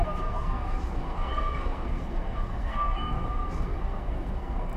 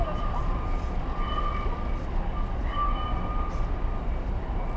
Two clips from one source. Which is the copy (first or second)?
first